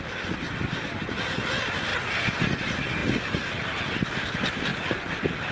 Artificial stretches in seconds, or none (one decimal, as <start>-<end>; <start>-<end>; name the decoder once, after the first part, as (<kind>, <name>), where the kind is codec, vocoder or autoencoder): none